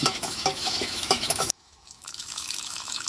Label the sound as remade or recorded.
remade